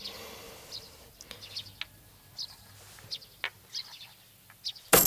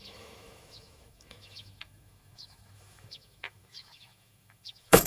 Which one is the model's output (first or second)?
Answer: second